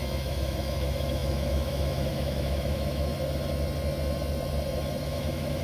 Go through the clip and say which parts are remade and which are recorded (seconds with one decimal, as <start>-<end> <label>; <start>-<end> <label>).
0.0-3.1 remade; 3.1-5.0 recorded; 5.0-5.6 remade